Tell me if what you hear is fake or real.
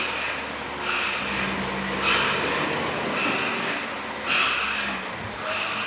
real